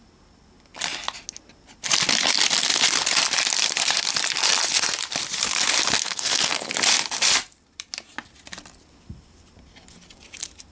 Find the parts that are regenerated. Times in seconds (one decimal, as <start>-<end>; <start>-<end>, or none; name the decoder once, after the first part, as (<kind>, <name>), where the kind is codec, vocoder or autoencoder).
6.0-6.7 (codec, SNAC)